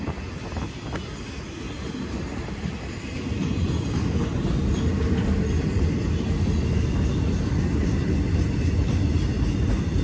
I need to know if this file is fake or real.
real